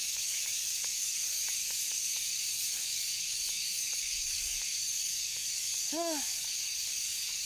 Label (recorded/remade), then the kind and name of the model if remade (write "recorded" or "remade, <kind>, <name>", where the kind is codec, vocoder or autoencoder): remade, codec, DAC